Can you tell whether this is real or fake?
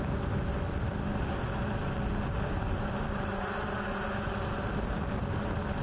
real